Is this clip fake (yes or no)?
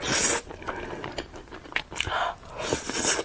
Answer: no